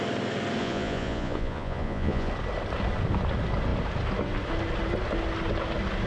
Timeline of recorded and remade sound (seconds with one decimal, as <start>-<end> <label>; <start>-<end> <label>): 0.0-0.6 recorded; 0.6-2.3 remade; 2.3-6.1 recorded